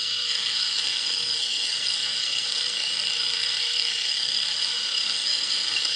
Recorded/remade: remade